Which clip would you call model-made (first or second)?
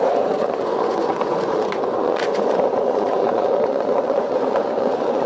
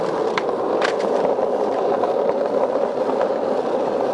first